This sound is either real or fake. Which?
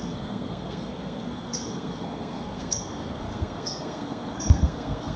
fake